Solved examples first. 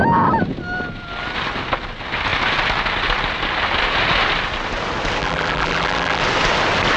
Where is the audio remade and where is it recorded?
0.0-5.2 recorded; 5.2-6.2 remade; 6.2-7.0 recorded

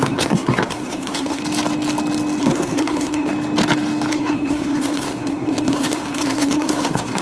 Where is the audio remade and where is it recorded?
0.0-1.4 remade; 1.4-2.4 recorded; 2.4-3.3 remade; 3.3-4.1 recorded; 4.1-7.2 remade

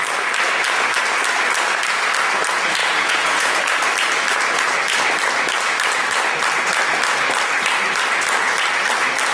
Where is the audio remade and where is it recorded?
0.0-2.8 recorded; 2.8-3.6 remade; 3.6-9.3 recorded

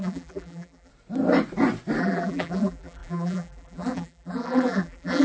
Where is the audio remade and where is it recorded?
0.0-0.9 remade; 0.9-2.0 recorded; 2.0-5.2 remade

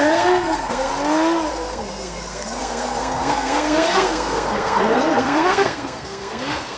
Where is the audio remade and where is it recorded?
0.0-0.9 remade; 0.9-1.5 recorded; 1.5-6.8 remade

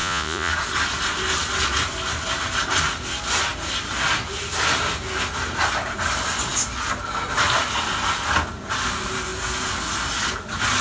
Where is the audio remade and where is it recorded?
0.0-0.5 remade; 0.5-10.8 recorded